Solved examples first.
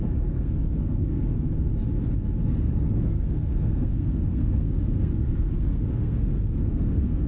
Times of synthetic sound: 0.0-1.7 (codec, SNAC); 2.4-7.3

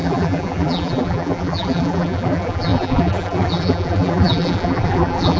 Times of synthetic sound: 0.0-5.4 (vocoder, BigVGAN v2)

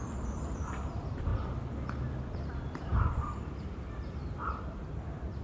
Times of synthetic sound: 0.0-1.3 (vocoder, BigVGAN v2); 2.4-5.4

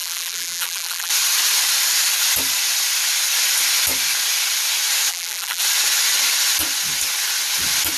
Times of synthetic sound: 0.0-1.1 (vocoder, BigVGAN v2); 5.1-5.6